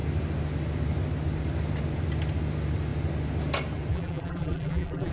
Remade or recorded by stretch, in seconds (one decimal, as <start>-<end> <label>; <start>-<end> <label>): 0.0-3.9 recorded; 3.9-5.1 remade